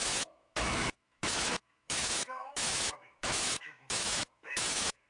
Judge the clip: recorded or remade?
remade